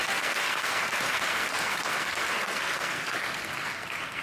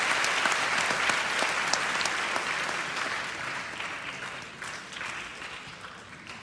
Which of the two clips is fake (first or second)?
first